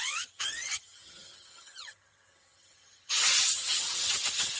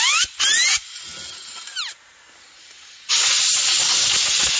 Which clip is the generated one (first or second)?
first